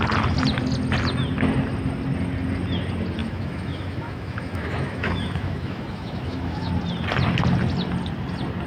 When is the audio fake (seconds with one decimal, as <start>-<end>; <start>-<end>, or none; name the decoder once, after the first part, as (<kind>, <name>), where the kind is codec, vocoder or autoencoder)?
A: 3.2-6.7 (autoencoder, DAC-VAE)